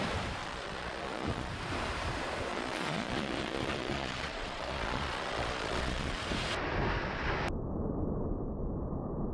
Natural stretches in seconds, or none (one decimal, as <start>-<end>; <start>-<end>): 0.0-0.4; 1.5-2.5; 6.2-9.3